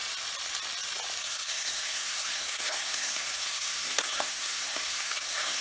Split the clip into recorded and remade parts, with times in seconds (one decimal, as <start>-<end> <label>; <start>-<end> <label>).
0.0-1.2 recorded; 1.2-5.6 remade